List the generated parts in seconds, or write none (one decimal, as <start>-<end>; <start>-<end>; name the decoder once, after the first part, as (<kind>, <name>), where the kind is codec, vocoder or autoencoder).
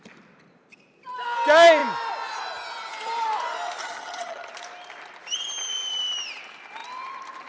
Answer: 3.8-4.5 (vocoder, HiFi-GAN)